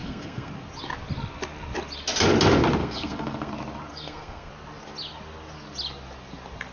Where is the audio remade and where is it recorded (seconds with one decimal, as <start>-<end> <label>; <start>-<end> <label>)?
0.0-0.5 remade; 0.5-2.8 recorded; 2.8-3.5 remade; 3.5-3.9 recorded; 3.9-4.5 remade; 4.5-6.7 recorded